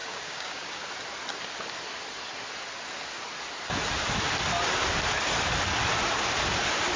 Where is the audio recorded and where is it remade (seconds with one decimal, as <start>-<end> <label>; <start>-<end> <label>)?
0.0-0.8 remade; 0.8-7.0 recorded